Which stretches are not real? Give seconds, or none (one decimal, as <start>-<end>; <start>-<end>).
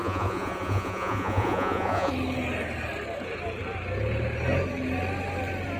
0.0-2.1